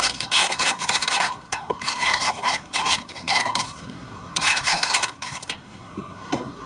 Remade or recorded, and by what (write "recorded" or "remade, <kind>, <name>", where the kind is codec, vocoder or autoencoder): remade, codec, SNAC